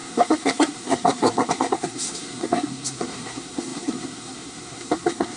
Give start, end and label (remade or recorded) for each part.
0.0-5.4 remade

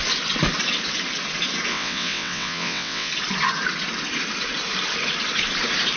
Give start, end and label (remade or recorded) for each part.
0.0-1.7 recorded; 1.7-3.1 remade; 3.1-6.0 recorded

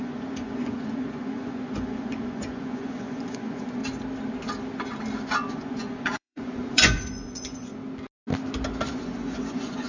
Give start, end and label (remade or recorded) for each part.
0.0-3.8 remade; 3.8-5.5 recorded; 5.5-7.7 remade; 7.7-8.9 recorded; 8.9-9.9 remade

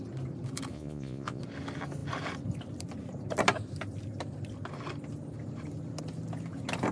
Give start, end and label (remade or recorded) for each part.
0.0-0.7 recorded; 0.7-1.4 remade; 1.4-6.9 recorded

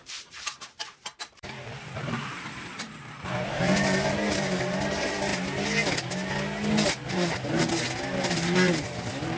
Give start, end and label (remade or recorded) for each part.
0.0-5.3 remade; 5.3-7.1 recorded; 7.1-7.7 remade; 7.7-8.8 recorded; 8.8-9.4 remade

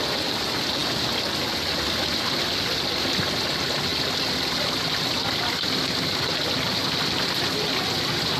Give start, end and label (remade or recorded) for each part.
0.0-8.4 recorded

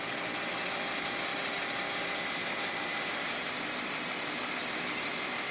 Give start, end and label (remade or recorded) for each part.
0.0-5.5 recorded

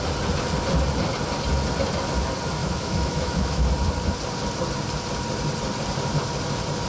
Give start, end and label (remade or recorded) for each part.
0.0-2.6 recorded; 2.6-3.7 remade; 3.7-6.9 recorded